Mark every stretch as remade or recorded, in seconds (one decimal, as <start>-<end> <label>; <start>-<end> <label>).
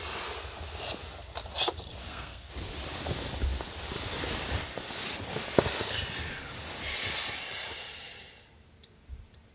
0.0-2.0 recorded; 2.0-2.5 remade; 2.5-9.5 recorded